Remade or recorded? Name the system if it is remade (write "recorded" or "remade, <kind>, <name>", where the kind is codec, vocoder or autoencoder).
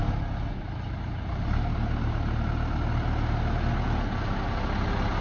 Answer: recorded